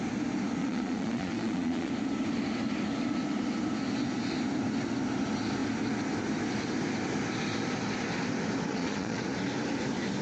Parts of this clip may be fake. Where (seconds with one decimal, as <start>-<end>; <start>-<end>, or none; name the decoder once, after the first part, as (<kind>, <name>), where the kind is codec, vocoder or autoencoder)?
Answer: 0.6-1.9 (vocoder, Vocos); 8.7-9.2